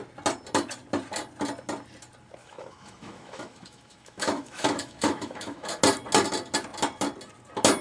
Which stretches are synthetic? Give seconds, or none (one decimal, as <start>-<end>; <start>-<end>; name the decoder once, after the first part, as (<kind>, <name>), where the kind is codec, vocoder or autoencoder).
2.4-5.8 (autoencoder, DAC-VAE)